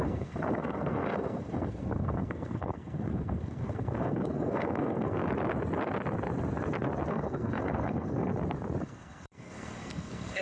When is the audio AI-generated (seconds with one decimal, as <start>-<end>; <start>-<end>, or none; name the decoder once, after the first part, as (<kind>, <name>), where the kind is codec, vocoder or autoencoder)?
0.0-5.2 (codec, SNAC); 7.1-8.3; 8.8-10.4